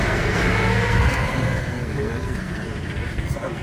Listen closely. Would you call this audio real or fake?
fake